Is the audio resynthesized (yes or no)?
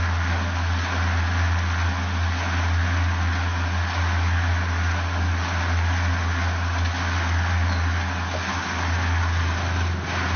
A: no